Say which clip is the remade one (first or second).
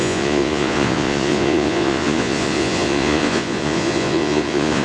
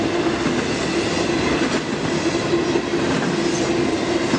first